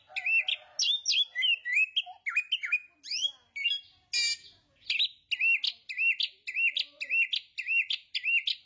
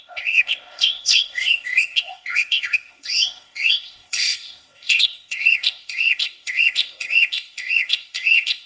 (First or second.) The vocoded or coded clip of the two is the second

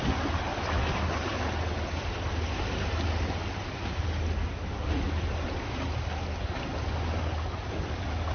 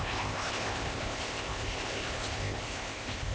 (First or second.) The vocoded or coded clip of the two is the second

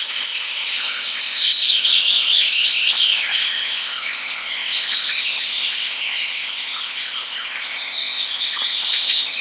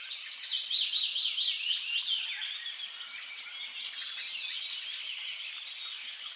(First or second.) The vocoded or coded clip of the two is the first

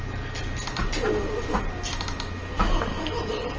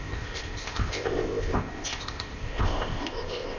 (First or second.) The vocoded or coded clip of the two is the second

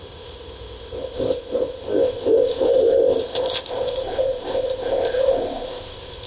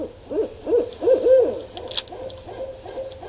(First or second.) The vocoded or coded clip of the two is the first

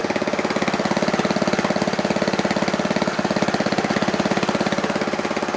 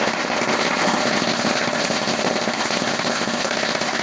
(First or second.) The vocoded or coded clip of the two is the second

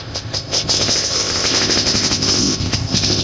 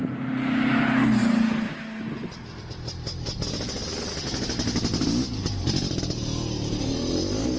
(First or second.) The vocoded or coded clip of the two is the first